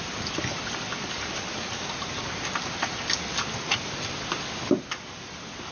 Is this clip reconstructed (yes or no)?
no